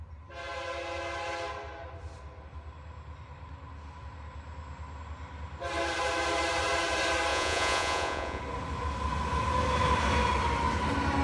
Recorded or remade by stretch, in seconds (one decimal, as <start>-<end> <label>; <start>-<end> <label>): 0.0-7.3 recorded; 7.3-8.4 remade; 8.4-11.2 recorded